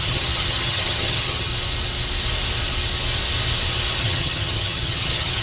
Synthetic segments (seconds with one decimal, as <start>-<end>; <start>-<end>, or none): 0.0-1.5; 4.0-5.4